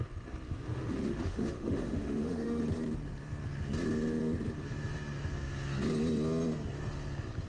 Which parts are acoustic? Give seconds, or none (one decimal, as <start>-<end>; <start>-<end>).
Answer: 0.0-0.7; 2.6-7.5